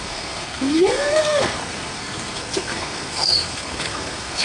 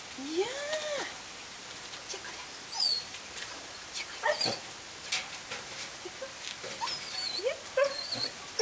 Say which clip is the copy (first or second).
first